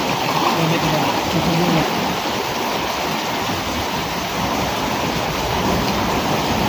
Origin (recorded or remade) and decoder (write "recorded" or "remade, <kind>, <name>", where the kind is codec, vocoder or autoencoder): recorded